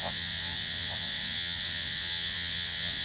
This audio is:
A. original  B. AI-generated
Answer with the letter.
B